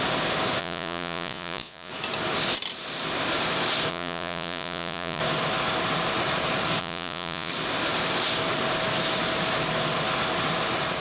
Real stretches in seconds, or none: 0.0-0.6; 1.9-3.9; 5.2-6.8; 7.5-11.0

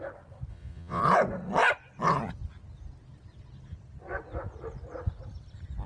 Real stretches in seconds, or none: 0.0-0.5; 1.0-5.9

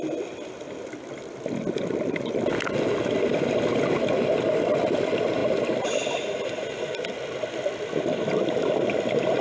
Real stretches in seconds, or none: 0.0-9.4

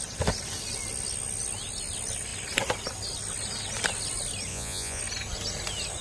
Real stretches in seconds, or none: 0.0-4.5; 5.0-6.0

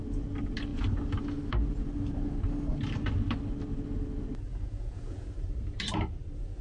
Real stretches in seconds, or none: 0.0-4.5; 5.3-6.6

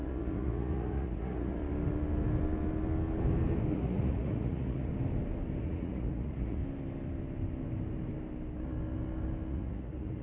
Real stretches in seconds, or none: 1.6-3.7; 4.9-5.6; 6.6-9.5

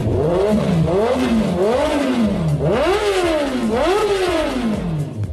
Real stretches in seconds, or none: 1.4-1.8; 2.4-4.0; 4.5-5.3

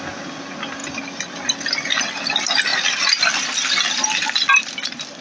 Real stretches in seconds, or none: 0.0-5.2